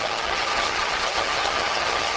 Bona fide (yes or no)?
no